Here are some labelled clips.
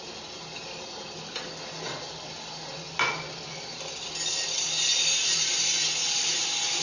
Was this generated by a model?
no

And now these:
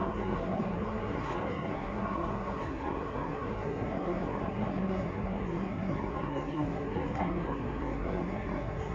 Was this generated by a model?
yes